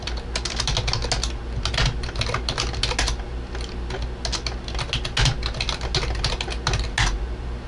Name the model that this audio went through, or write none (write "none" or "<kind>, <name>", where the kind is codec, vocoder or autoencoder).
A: none